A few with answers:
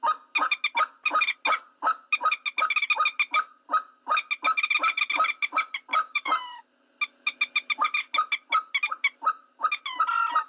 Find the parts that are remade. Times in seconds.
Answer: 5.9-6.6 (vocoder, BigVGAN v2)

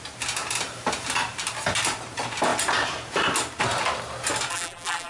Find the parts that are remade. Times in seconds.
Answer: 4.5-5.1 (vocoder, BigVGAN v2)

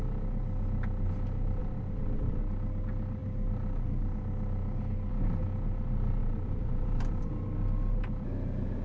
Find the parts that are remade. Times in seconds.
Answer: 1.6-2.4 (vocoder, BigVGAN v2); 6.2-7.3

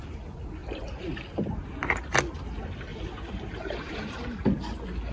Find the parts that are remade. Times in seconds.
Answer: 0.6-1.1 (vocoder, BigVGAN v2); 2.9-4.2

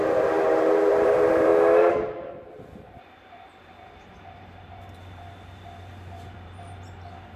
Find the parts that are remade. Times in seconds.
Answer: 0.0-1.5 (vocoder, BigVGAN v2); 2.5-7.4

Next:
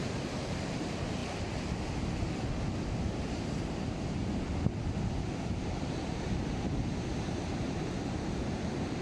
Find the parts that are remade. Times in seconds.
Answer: 0.0-1.2 (vocoder, BigVGAN v2); 3.4-4.2; 5.5-9.0

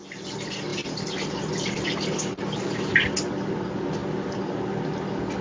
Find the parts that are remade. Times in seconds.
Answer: 0.7-2.9 (vocoder, BigVGAN v2)